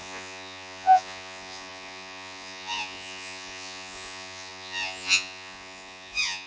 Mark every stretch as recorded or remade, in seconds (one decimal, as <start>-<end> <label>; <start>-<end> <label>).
0.0-6.5 remade